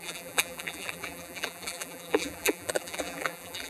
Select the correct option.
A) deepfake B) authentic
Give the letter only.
A